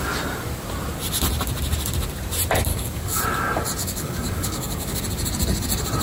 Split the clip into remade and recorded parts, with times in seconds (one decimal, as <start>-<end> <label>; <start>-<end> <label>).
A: 0.0-2.7 recorded; 2.7-3.2 remade; 3.2-3.8 recorded; 3.8-5.0 remade; 5.0-6.0 recorded